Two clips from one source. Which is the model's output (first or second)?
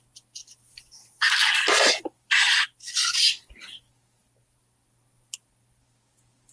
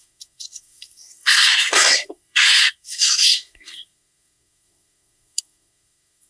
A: second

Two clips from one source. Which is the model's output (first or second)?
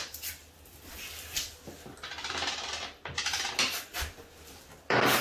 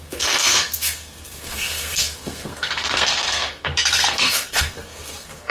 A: second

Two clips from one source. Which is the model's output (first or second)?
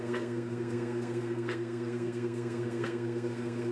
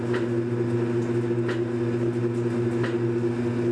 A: first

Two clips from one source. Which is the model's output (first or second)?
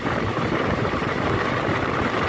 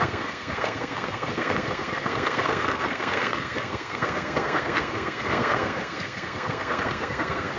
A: second